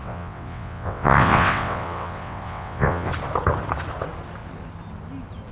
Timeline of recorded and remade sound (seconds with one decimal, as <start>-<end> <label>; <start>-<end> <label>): 0.0-3.1 remade; 3.1-5.5 recorded

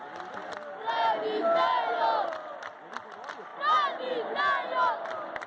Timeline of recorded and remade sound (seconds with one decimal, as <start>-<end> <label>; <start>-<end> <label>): 0.0-5.5 recorded

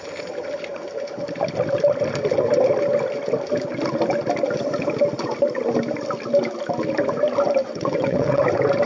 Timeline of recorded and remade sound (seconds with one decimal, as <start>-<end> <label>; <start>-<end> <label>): 0.0-7.6 recorded; 7.6-8.4 remade; 8.4-8.9 recorded

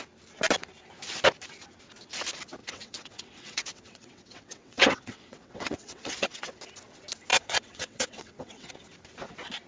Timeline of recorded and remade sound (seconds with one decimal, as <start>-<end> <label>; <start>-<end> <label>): 0.0-2.6 recorded; 2.6-6.5 remade; 6.5-7.3 recorded; 7.3-8.7 remade; 8.7-9.7 recorded